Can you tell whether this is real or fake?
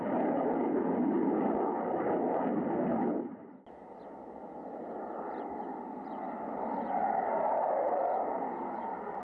real